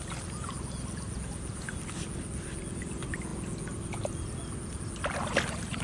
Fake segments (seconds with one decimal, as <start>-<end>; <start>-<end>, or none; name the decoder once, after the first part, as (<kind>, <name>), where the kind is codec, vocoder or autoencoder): none